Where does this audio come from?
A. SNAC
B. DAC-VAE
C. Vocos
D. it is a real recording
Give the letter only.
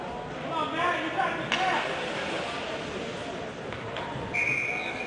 D